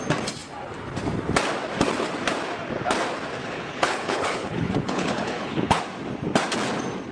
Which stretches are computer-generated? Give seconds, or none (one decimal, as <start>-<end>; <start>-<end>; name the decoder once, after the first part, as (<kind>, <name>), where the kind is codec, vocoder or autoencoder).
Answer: 3.4-5.8 (codec, HILCodec)